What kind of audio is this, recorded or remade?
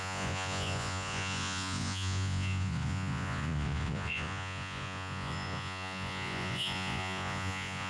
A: remade